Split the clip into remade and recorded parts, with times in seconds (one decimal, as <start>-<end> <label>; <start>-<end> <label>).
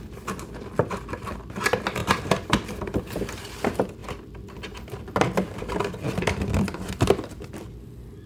0.0-2.0 recorded; 2.0-3.6 remade; 3.6-4.0 recorded; 4.0-7.5 remade; 7.5-8.3 recorded